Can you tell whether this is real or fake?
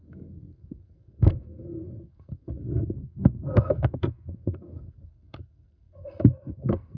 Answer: fake